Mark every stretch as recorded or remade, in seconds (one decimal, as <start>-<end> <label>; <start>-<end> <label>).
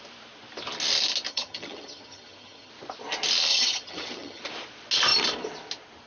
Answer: 0.0-1.3 recorded; 1.3-2.7 remade; 2.7-3.5 recorded; 3.5-4.4 remade; 4.4-6.1 recorded